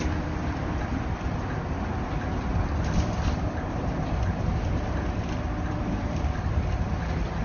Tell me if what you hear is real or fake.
fake